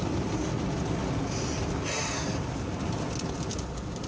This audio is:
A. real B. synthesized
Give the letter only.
A